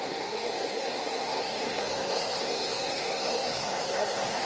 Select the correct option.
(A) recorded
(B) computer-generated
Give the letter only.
B